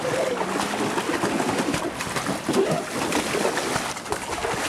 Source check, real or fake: real